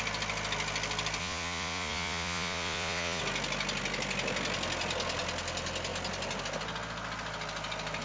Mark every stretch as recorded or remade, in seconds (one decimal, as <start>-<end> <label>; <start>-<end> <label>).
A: 0.0-1.2 recorded; 1.2-3.2 remade; 3.2-8.0 recorded